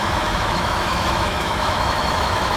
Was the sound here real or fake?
fake